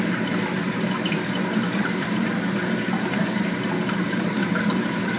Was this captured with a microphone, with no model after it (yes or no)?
no